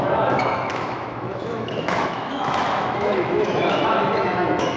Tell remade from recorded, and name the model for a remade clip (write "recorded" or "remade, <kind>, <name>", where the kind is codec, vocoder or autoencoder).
remade, autoencoder, DAC-VAE